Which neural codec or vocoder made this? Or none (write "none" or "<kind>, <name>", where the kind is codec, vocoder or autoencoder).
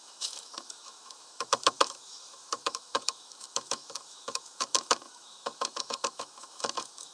autoencoder, DAC-VAE